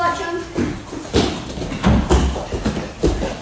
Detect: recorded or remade recorded